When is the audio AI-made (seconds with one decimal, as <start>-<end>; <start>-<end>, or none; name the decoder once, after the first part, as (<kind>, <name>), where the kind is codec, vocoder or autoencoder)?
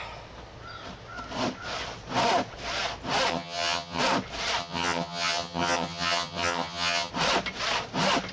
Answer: 3.3-4.0 (vocoder, HiFi-GAN); 4.6-7.1